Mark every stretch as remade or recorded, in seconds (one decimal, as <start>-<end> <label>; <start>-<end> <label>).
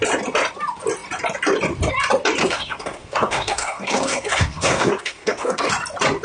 0.0-2.4 recorded; 2.4-5.7 remade; 5.7-6.2 recorded